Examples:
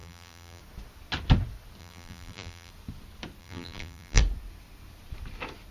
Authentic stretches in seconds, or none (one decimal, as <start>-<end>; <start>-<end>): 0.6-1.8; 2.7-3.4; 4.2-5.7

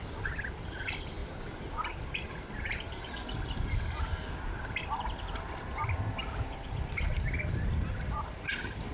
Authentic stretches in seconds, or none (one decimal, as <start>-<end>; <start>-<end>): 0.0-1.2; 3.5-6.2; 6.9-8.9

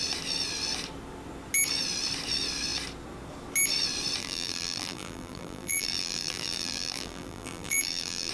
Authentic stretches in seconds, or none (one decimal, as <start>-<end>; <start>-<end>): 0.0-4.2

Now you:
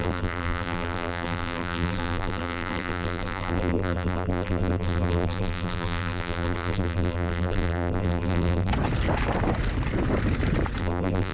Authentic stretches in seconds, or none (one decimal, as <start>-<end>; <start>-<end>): 8.7-10.8

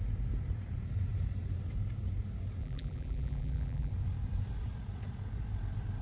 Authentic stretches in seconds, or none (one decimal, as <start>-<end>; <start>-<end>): 0.0-2.6; 3.9-6.0